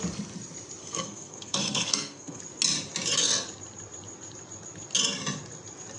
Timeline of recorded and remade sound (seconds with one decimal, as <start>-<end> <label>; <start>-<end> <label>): 0.0-0.8 recorded; 0.8-2.4 remade; 2.4-6.0 recorded